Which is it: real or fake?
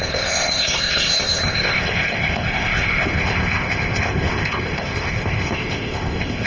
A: fake